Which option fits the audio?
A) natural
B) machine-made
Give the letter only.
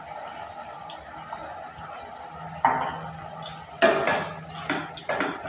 A